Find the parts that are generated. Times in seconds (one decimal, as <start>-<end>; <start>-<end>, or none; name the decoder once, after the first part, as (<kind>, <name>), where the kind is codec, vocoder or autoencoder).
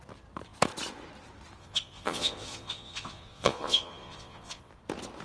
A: 1.6-4.7 (vocoder, Vocos)